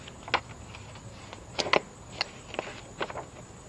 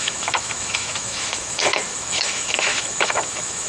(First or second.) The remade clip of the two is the second